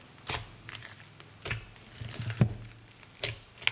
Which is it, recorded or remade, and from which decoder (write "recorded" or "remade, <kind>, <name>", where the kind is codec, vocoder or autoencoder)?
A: recorded